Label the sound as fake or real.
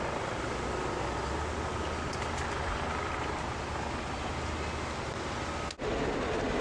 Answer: real